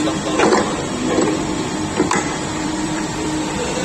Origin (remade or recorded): remade